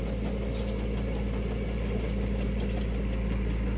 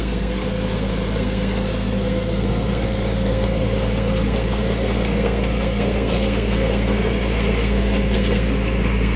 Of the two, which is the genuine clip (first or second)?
first